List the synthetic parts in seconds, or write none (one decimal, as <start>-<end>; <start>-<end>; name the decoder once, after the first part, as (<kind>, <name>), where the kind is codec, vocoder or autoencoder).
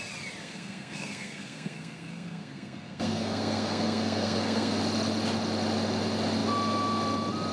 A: 0.4-4.8 (codec, SNAC)